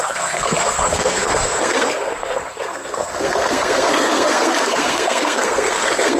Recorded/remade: remade